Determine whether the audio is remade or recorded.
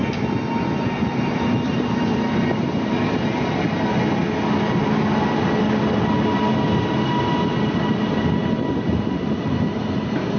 recorded